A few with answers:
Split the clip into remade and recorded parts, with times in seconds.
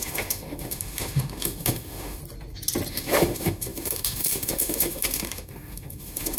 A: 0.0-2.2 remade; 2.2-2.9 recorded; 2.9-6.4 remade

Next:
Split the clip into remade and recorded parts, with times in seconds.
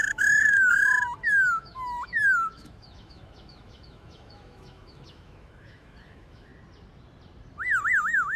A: 0.0-6.5 remade; 6.5-8.0 recorded; 8.0-8.4 remade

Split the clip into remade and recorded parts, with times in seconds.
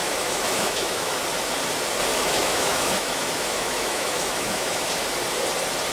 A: 0.0-1.1 remade; 1.1-2.1 recorded; 2.1-4.9 remade; 4.9-5.9 recorded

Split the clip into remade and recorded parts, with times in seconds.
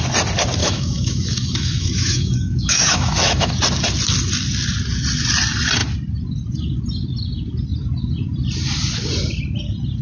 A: 0.0-0.6 recorded; 0.6-3.5 remade; 3.5-10.0 recorded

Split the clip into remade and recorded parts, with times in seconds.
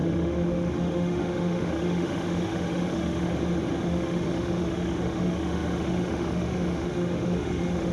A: 0.0-3.3 remade; 3.3-3.8 recorded; 3.8-7.9 remade